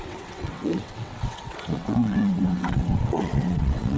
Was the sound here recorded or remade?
remade